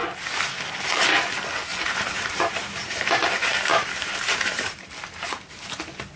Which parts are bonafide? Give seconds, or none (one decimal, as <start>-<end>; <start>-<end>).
0.0-1.7; 3.1-3.7; 4.9-6.2